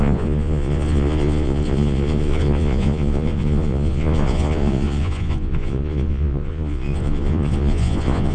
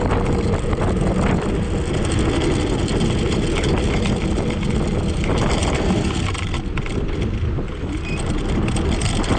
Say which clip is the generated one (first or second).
first